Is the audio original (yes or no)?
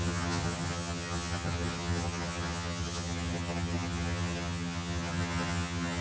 no